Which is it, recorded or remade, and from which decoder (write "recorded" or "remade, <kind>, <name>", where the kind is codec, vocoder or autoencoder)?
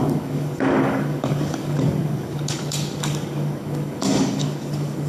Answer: remade, codec, DAC